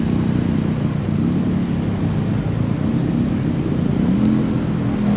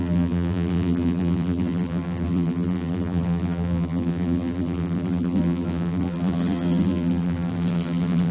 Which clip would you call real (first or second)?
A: first